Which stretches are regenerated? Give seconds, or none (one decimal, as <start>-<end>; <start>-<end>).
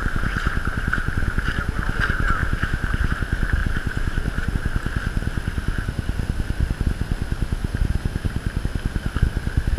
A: 0.0-1.1; 2.4-3.1; 3.6-4.5; 7.6-8.6